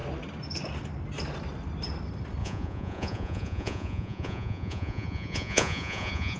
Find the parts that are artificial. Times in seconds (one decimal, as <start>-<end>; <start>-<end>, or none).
2.4-6.4